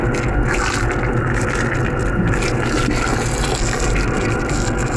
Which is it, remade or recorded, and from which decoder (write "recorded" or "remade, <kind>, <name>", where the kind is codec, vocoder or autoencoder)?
recorded